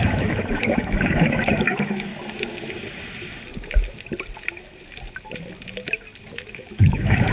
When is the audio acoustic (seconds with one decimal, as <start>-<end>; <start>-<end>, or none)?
2.1-6.5